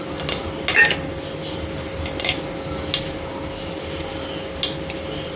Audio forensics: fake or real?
real